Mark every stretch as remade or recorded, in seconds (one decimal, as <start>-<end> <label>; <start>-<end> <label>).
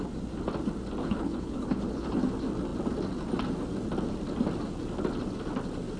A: 0.0-1.0 recorded; 1.0-2.1 remade; 2.1-6.0 recorded